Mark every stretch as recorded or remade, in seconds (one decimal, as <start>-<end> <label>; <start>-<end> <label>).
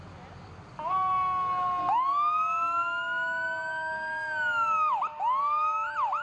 0.0-6.2 recorded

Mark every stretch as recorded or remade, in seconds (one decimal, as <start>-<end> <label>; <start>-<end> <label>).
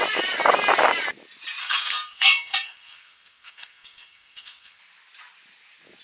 0.0-1.6 recorded; 1.6-4.8 remade; 4.8-6.0 recorded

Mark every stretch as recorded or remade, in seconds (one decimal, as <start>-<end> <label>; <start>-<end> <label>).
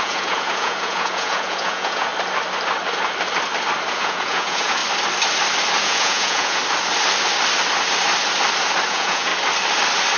0.0-2.1 remade; 2.1-3.9 recorded; 3.9-4.8 remade; 4.8-5.8 recorded; 5.8-6.6 remade; 6.6-8.9 recorded; 8.9-9.3 remade; 9.3-10.2 recorded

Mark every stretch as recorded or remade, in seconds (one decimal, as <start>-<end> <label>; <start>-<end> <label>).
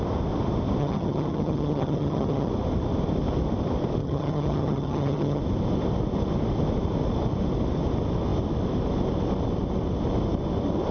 0.0-0.8 recorded; 0.8-2.5 remade; 2.5-4.0 recorded; 4.0-5.4 remade; 5.4-10.9 recorded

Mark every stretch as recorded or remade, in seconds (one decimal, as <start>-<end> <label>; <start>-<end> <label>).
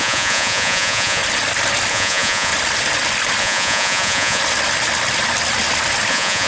0.0-1.2 remade; 1.2-1.9 recorded; 1.9-2.5 remade; 2.5-3.4 recorded; 3.4-4.4 remade; 4.4-6.1 recorded; 6.1-6.5 remade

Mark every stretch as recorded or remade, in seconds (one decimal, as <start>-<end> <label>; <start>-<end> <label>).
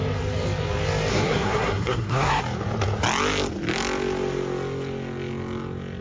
0.0-1.1 recorded; 1.1-2.4 remade; 2.4-6.0 recorded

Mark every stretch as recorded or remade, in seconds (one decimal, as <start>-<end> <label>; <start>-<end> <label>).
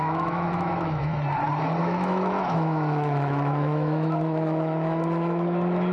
0.0-1.1 remade; 1.1-1.8 recorded; 1.8-5.9 remade